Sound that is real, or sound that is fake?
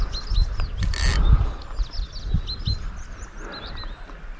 real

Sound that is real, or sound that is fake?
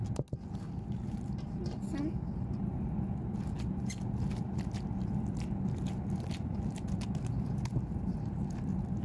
real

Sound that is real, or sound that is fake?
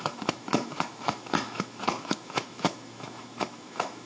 fake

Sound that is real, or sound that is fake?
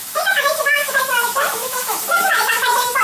fake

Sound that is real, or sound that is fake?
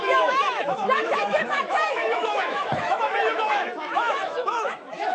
fake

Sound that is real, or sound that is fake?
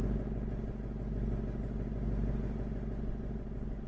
real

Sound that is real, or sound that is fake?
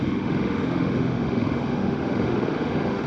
fake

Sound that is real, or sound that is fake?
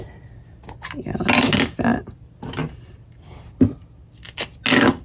real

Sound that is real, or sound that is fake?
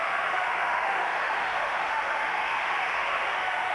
fake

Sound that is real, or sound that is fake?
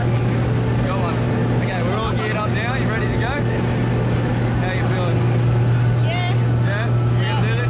real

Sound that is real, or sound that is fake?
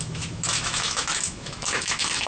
fake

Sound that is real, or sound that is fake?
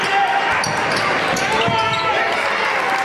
real